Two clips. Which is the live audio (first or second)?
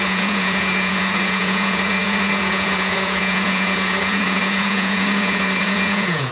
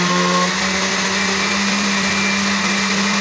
second